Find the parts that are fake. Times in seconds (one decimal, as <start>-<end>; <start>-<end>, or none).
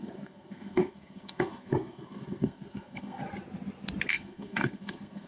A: 0.0-3.2; 4.1-5.3